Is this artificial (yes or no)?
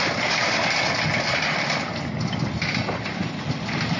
no